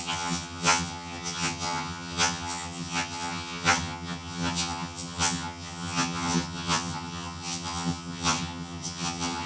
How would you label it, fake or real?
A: fake